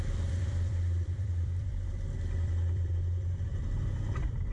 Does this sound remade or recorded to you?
remade